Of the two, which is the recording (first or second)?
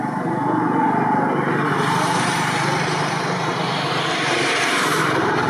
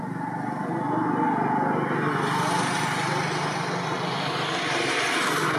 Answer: second